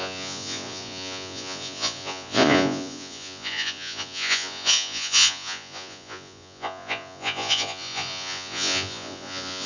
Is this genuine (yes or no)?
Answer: no